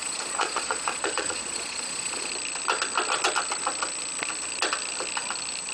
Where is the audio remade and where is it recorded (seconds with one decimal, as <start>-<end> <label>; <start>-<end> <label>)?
0.0-2.3 remade; 2.3-5.7 recorded